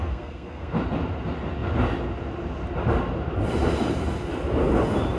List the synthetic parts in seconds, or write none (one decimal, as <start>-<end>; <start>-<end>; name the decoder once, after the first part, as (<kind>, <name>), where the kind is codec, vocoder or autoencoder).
0.0-0.7 (codec, SNAC)